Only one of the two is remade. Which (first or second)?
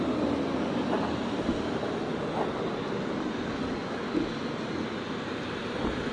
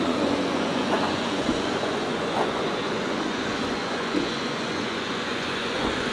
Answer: second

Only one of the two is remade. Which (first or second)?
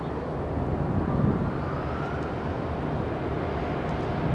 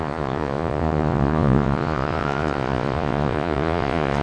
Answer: second